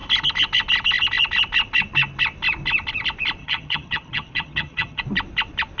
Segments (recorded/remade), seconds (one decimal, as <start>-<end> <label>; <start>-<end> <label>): 0.0-3.4 recorded; 3.4-5.0 remade; 5.0-5.8 recorded